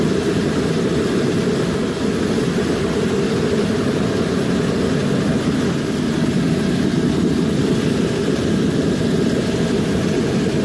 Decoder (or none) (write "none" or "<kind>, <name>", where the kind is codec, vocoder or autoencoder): none